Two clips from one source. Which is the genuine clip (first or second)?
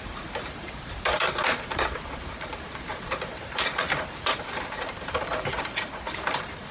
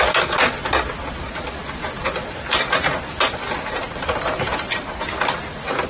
second